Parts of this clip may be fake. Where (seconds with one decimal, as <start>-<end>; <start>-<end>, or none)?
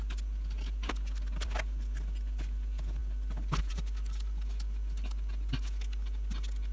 none